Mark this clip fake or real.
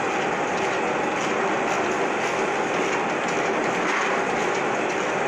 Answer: real